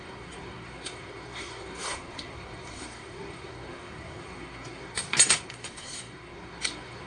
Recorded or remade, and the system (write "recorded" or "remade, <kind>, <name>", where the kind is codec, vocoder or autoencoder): remade, codec, SNAC